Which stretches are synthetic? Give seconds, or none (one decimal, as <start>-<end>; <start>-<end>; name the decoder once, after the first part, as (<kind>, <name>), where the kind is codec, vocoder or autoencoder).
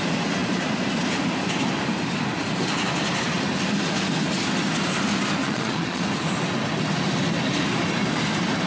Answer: 5.4-6.0 (vocoder, Vocos)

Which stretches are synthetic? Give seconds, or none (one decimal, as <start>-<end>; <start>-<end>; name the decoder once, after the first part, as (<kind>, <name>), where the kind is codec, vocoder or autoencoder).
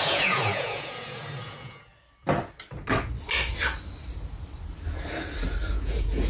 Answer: 0.0-1.9 (vocoder, Vocos); 5.7-6.3